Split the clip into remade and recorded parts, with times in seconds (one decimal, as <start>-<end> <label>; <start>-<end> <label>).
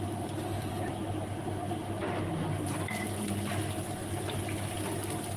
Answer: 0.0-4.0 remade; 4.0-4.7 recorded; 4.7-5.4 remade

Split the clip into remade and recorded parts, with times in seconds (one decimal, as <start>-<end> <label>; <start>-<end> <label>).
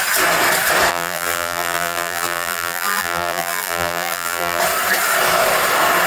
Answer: 0.0-0.9 recorded; 0.9-4.6 remade; 4.6-6.1 recorded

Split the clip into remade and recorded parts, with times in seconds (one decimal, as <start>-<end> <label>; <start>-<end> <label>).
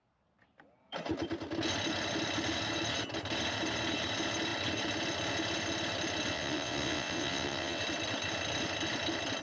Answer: 0.0-6.3 recorded; 6.3-7.8 remade; 7.8-9.4 recorded